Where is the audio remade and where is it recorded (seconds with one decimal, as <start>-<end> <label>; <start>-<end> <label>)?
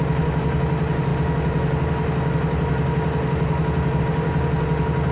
0.0-5.1 recorded